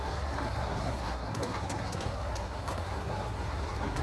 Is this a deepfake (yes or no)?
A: yes